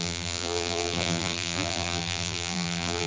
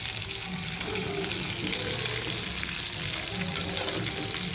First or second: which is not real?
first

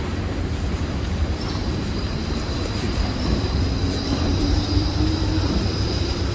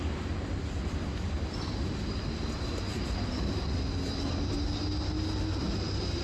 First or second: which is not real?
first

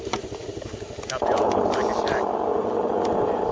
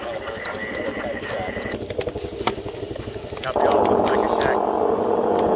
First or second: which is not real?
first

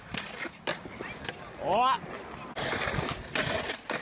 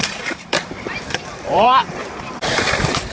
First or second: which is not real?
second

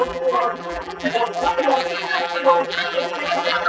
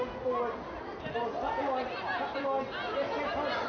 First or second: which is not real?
first